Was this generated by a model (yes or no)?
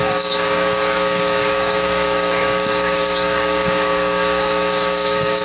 yes